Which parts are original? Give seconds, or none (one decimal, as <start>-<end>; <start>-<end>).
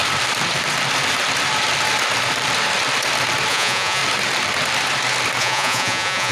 0.0-3.5; 4.0-5.4